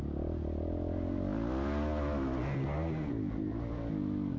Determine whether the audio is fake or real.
real